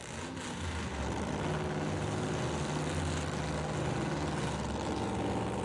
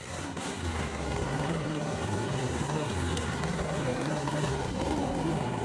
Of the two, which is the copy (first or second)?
second